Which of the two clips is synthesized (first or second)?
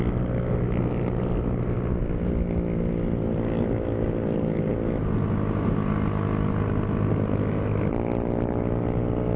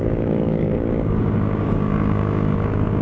second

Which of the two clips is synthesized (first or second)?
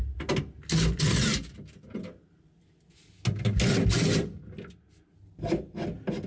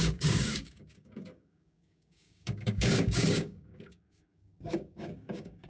second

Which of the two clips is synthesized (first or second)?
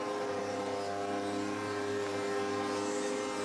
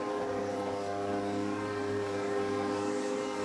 second